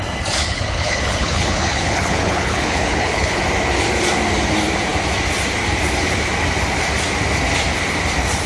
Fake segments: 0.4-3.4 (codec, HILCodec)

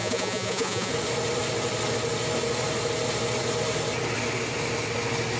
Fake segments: 0.0-0.9 (vocoder, Vocos)

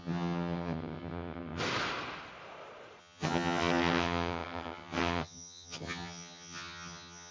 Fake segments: 0.0-1.6 (vocoder, HiFi-GAN); 3.0-7.3

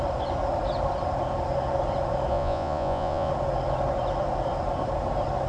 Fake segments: 2.3-3.3 (vocoder, Vocos)

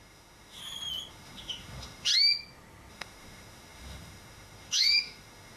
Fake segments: 0.0-0.6 (autoencoder, DAC-VAE); 1.1-2.1; 2.9-5.6